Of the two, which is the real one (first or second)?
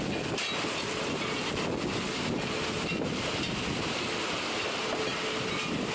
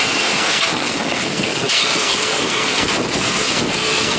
first